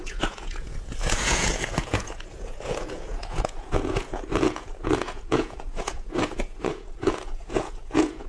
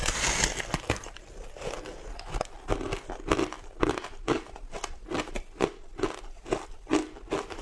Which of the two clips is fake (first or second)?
first